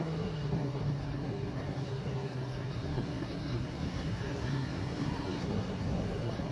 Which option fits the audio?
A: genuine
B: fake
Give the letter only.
B